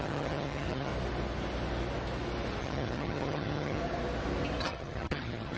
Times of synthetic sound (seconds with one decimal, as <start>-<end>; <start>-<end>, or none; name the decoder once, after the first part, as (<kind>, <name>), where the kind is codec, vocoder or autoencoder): 0.0-0.9 (vocoder, HiFi-GAN); 2.6-3.8; 4.6-5.6